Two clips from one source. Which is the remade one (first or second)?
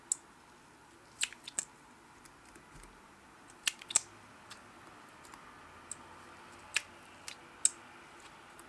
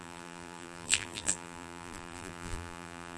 second